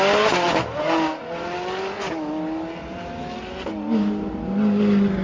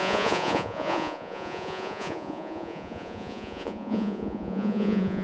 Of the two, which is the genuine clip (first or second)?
first